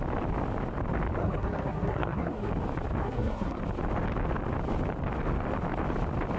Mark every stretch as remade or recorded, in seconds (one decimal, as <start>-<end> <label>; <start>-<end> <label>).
0.0-1.2 recorded; 1.2-2.5 remade; 2.5-3.0 recorded; 3.0-3.6 remade; 3.6-6.4 recorded